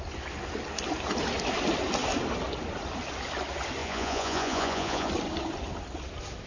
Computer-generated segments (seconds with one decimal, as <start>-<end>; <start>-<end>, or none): 3.8-5.1